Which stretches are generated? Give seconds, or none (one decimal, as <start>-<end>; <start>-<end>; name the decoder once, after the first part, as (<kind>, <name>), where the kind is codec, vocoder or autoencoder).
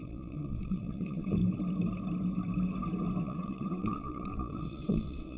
0.0-1.4 (vocoder, WaveNeXt); 3.2-5.4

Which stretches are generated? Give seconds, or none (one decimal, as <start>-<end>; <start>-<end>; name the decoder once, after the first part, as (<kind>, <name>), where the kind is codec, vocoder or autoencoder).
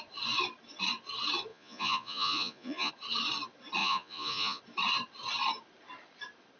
1.5-2.9 (vocoder, Vocos); 3.8-4.6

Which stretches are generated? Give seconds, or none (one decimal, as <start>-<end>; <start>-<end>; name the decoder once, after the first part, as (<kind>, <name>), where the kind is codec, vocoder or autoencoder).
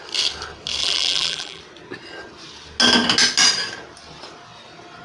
0.8-1.6 (vocoder, BigVGAN v2)